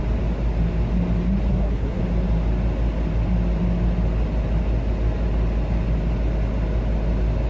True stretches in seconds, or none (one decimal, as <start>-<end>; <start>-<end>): 0.0-1.5; 2.0-7.5